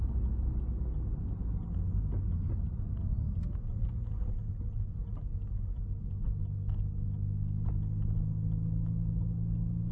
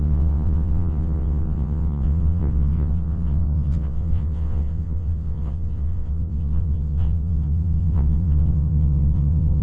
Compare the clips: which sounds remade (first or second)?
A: second